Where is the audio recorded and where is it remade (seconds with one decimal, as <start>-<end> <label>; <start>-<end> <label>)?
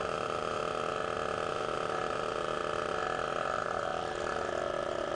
0.0-0.6 remade; 0.6-1.5 recorded; 1.5-2.6 remade; 2.6-3.3 recorded; 3.3-3.9 remade; 3.9-5.1 recorded